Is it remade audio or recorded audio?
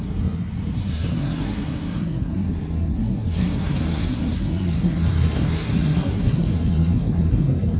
remade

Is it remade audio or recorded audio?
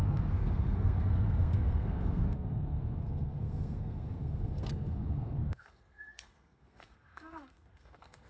remade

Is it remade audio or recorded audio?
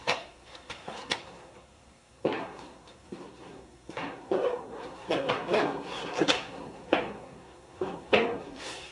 remade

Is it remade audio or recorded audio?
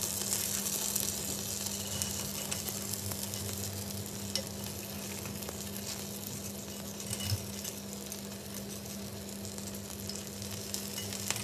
recorded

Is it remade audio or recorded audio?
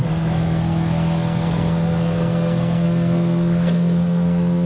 remade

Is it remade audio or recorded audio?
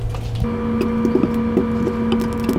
recorded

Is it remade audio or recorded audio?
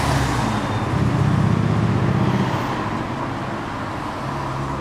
recorded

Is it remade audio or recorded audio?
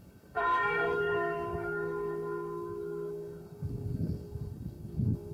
remade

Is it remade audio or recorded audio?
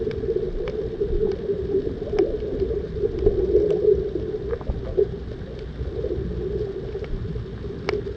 recorded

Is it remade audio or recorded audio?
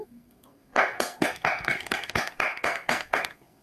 remade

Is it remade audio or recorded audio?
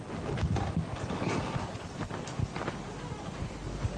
recorded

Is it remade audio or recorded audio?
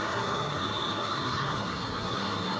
remade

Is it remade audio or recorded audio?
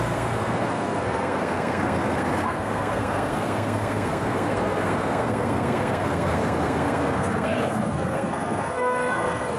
remade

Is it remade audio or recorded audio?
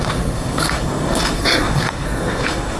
remade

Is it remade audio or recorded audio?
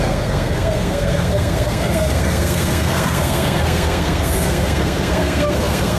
remade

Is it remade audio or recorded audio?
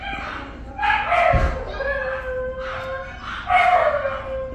recorded